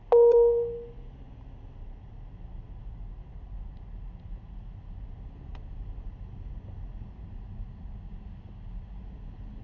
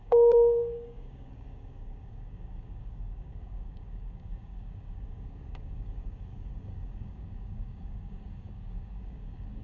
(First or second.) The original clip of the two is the first